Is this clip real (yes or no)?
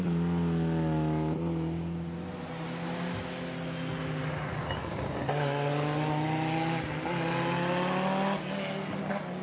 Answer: yes